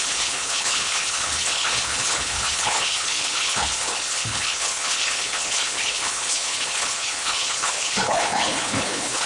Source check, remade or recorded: remade